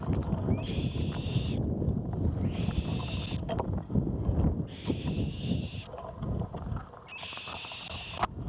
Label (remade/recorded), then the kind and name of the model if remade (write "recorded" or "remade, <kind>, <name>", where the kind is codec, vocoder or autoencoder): recorded